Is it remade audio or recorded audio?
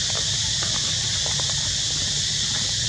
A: recorded